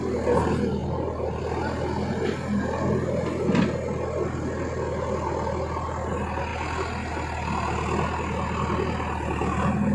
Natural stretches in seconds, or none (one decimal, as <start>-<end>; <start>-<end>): 0.0-9.9